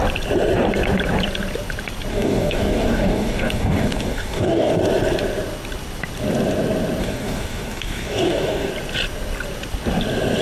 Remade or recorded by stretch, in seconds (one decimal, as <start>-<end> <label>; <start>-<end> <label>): 0.0-2.1 recorded; 2.1-4.8 remade; 4.8-7.0 recorded; 7.0-8.7 remade; 8.7-10.4 recorded